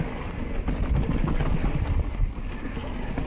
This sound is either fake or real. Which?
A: real